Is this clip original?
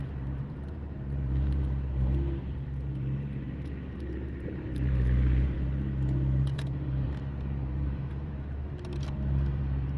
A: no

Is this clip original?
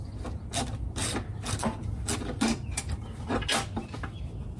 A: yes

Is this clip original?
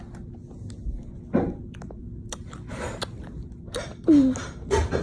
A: yes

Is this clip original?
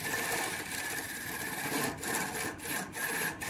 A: yes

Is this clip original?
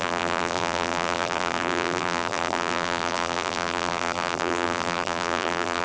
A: no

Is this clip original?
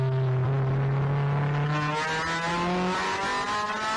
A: yes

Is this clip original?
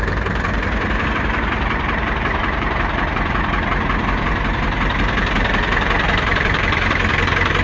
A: no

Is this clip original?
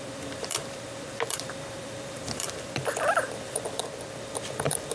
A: no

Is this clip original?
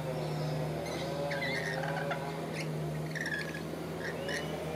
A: yes